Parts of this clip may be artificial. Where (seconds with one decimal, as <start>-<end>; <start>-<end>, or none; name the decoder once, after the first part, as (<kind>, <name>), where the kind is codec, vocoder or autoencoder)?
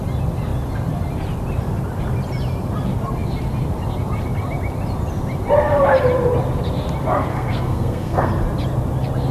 7.3-8.3 (codec, SNAC)